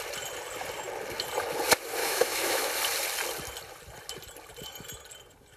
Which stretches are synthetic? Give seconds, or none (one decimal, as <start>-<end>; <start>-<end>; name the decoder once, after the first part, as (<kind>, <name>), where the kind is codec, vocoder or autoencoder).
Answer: 2.0-2.7 (autoencoder, DAC-VAE)